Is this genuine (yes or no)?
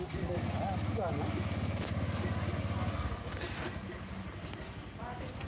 yes